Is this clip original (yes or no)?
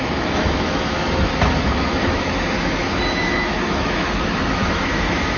no